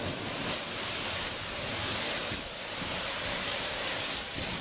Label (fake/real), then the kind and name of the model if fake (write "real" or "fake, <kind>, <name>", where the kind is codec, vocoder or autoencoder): real